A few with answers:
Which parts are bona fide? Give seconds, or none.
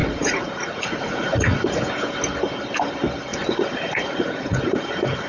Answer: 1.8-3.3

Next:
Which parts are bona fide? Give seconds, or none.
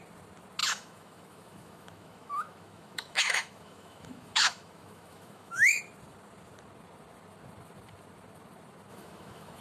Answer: 0.0-0.6; 5.8-8.9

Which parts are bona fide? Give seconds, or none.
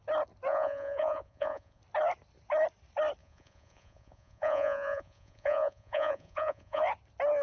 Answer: 0.0-0.5; 1.8-3.2; 6.8-7.4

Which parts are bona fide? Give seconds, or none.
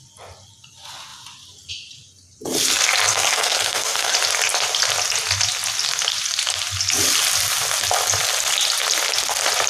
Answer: 0.0-3.1; 4.1-9.7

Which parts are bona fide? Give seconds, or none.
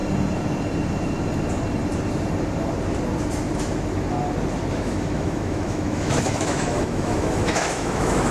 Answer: 0.0-4.7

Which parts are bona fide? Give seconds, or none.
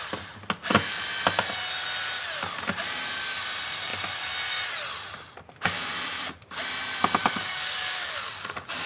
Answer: 0.0-7.2